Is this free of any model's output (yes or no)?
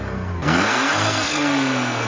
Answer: no